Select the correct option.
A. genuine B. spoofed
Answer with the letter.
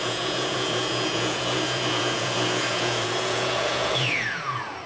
B